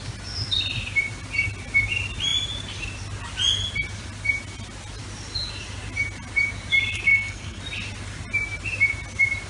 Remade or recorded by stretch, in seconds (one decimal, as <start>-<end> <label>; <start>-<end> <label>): 0.0-7.1 recorded; 7.1-7.6 remade; 7.6-9.5 recorded